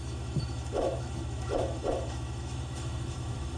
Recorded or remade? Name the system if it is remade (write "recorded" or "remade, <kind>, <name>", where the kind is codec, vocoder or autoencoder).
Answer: remade, autoencoder, DAC-VAE